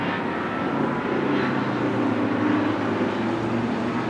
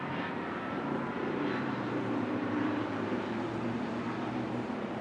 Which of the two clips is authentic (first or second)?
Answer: first